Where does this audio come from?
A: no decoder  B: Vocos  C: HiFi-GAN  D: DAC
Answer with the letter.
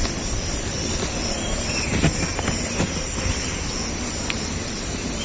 A